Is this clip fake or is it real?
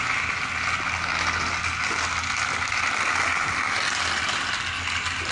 fake